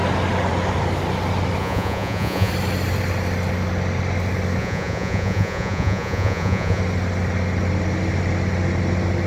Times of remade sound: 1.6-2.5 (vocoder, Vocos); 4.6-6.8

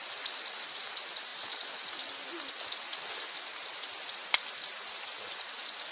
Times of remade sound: none

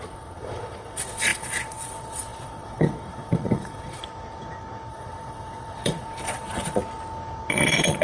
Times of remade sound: 0.0-4.0 (vocoder, Vocos); 4.9-6.8; 7.5-8.0

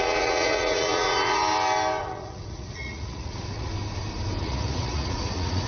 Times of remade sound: 0.0-1.4 (vocoder, Vocos); 2.0-3.7; 4.4-5.7

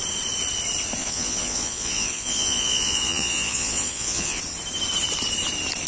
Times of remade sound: 1.0-4.4 (vocoder, Vocos)

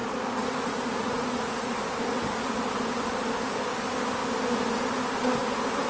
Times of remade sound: 0.0-1.7 (vocoder, Vocos)

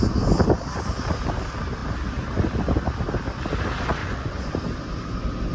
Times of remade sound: 4.0-4.5 (vocoder, Vocos)